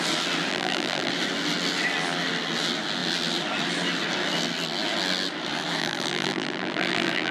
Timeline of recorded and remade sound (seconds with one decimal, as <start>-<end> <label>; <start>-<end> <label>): 0.0-0.5 recorded; 0.5-1.1 remade; 1.1-5.8 recorded; 5.8-7.3 remade